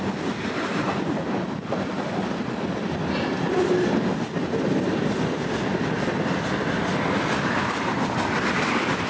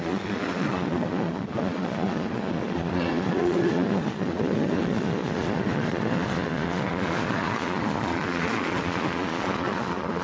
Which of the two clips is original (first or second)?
first